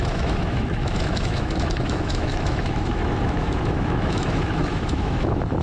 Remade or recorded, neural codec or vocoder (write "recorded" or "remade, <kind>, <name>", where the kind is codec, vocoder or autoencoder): remade, autoencoder, DAC-VAE